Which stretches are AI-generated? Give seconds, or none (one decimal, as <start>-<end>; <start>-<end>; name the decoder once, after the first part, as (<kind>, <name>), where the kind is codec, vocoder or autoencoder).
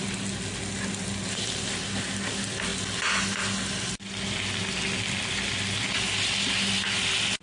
none